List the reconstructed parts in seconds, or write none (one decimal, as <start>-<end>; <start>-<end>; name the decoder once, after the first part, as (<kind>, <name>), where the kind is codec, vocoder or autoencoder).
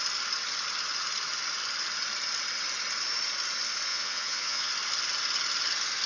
3.9-4.7 (vocoder, Vocos)